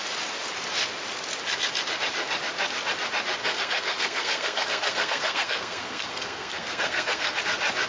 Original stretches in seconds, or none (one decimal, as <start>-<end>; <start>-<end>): 0.0-3.4; 7.4-7.9